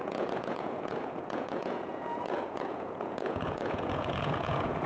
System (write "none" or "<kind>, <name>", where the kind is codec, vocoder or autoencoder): vocoder, Vocos